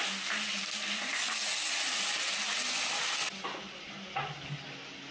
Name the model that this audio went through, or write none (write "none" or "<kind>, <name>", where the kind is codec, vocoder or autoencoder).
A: none